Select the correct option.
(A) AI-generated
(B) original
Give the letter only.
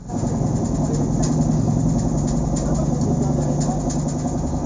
B